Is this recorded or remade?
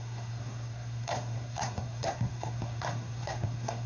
remade